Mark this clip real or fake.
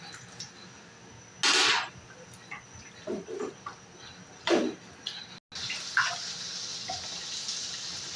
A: real